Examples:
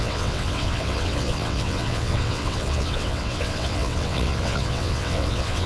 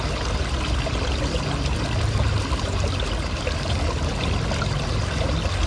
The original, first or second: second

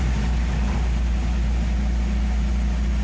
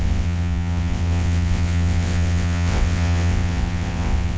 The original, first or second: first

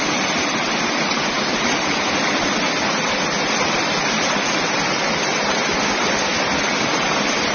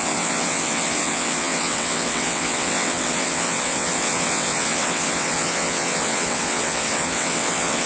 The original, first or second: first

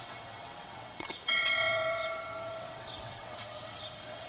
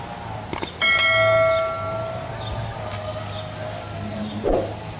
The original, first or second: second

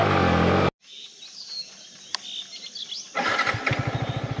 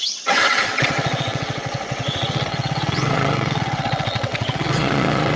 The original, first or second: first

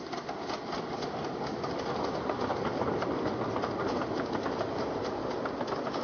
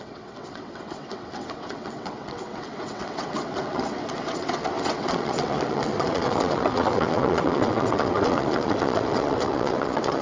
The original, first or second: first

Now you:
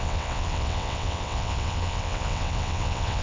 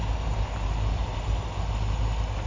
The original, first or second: second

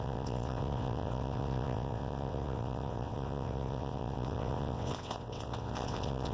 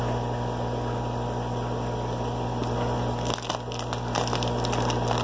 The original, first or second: second